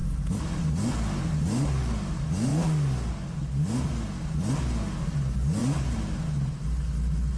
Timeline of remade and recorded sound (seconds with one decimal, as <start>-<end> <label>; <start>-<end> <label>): 0.0-0.6 remade; 0.6-5.6 recorded; 5.6-6.2 remade; 6.2-7.4 recorded